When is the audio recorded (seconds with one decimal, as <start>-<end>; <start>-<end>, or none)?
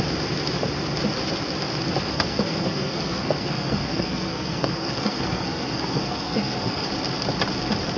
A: 0.0-2.1; 6.9-8.0